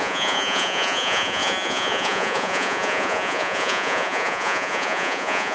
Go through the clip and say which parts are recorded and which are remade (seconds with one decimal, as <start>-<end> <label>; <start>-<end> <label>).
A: 0.0-5.5 remade